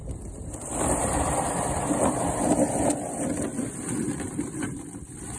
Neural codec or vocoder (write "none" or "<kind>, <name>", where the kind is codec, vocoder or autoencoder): none